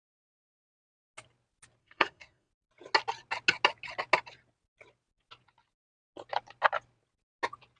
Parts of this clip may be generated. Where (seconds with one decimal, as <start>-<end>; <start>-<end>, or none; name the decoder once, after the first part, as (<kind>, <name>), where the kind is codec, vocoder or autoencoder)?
1.8-2.5 (codec, SNAC)